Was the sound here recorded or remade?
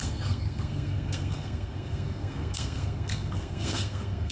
remade